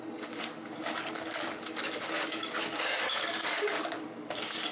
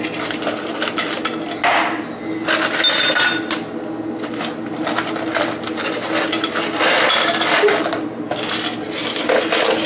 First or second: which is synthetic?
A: first